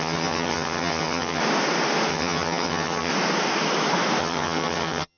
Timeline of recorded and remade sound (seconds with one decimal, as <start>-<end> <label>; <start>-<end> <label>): 0.0-1.4 remade; 1.4-2.1 recorded; 2.1-3.1 remade; 3.1-4.2 recorded; 4.2-5.2 remade